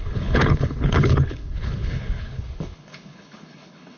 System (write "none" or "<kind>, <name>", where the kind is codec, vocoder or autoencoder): codec, HILCodec